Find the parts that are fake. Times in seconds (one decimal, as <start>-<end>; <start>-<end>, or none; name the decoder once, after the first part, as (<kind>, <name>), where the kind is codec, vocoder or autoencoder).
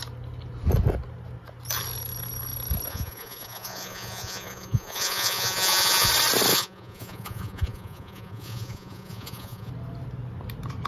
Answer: 2.9-6.1 (vocoder, Vocos); 6.5-9.7